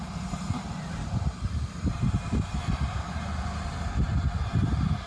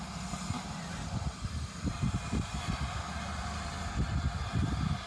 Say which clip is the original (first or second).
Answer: second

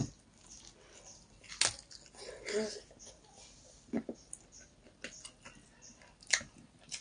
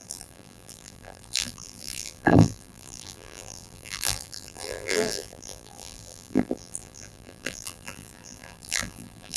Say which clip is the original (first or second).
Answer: first